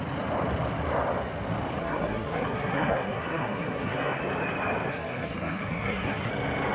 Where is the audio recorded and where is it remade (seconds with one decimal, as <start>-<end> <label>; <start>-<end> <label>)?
0.0-1.8 recorded; 1.8-4.2 remade; 4.2-4.9 recorded; 4.9-6.3 remade; 6.3-6.7 recorded